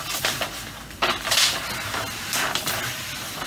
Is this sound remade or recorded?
recorded